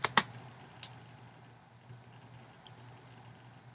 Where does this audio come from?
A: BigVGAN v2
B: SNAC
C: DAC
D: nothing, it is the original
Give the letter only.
D